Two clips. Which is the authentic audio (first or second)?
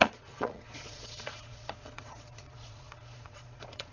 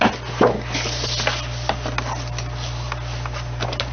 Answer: second